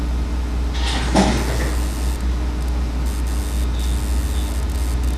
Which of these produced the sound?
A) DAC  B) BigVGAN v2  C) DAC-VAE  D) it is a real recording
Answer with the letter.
D